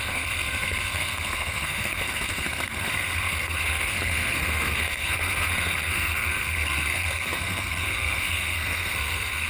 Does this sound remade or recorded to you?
remade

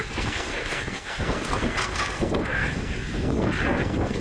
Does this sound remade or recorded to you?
remade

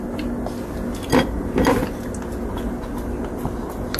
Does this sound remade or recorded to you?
recorded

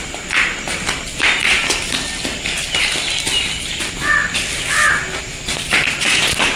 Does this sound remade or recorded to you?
recorded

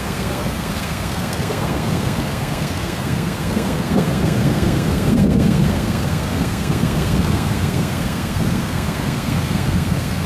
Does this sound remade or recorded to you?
remade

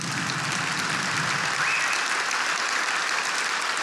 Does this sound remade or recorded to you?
recorded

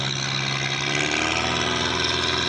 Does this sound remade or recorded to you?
recorded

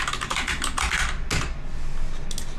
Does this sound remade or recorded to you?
recorded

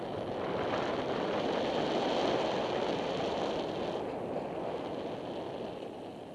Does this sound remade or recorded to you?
recorded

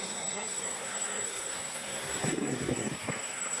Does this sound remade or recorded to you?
remade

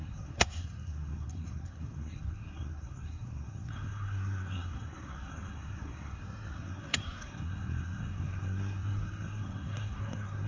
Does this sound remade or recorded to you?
remade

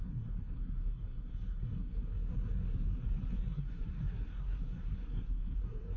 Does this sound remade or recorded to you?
remade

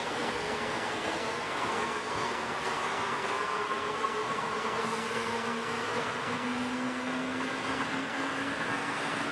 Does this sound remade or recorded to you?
remade